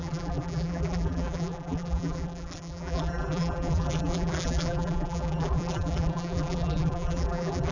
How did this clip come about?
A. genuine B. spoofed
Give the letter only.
B